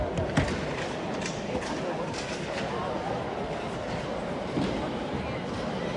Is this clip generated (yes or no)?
no